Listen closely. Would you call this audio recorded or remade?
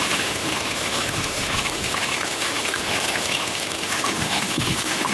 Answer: remade